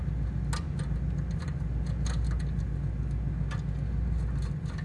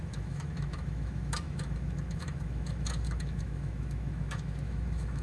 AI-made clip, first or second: second